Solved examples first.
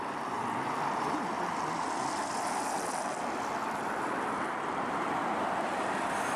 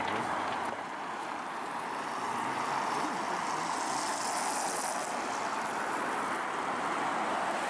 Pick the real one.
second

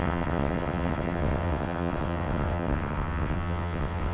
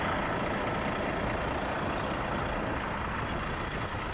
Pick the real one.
second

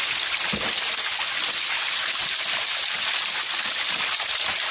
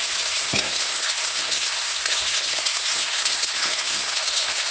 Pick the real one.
first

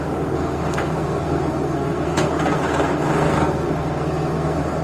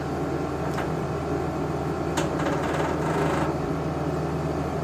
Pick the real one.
second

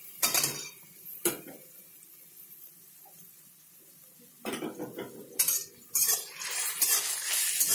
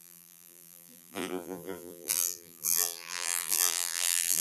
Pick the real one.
first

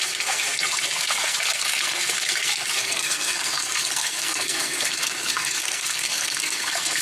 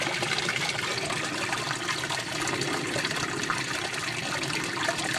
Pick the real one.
second